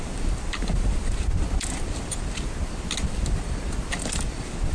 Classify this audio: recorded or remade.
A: recorded